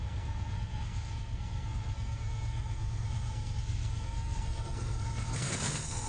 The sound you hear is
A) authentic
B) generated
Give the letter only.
B